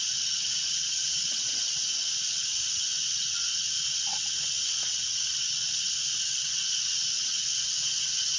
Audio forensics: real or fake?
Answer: fake